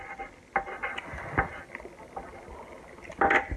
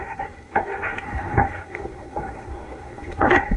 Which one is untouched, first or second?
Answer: first